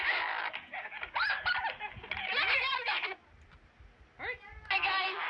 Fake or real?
real